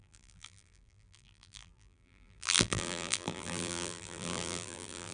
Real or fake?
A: fake